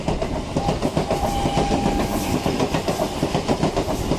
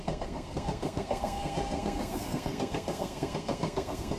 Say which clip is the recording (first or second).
first